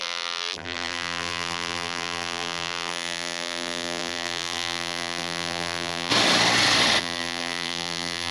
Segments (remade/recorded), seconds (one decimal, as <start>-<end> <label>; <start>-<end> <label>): 0.0-6.1 remade; 6.1-7.0 recorded; 7.0-8.3 remade